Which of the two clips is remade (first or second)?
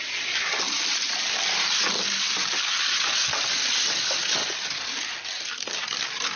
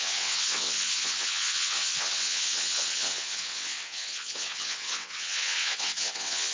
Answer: second